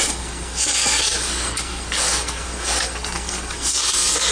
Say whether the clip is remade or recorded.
remade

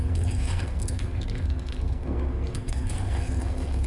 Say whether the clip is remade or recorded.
remade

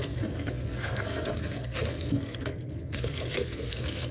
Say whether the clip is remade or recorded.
remade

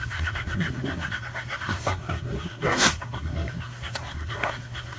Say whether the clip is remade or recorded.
remade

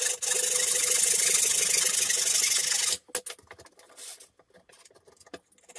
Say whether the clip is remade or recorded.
recorded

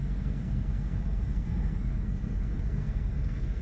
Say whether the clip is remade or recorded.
remade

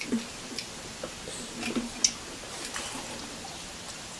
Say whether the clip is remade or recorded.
recorded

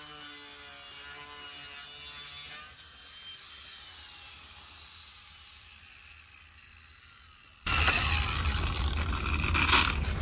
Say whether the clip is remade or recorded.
recorded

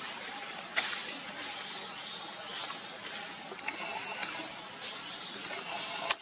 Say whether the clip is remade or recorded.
recorded